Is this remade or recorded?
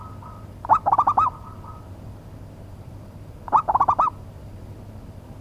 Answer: recorded